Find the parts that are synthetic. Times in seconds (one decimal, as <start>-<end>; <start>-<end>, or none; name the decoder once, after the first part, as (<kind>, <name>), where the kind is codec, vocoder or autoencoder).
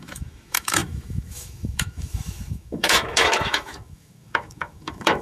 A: 0.0-5.2 (autoencoder, DAC-VAE)